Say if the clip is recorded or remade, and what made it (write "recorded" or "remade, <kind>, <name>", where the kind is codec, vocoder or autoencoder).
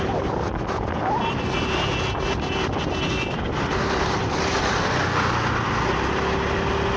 recorded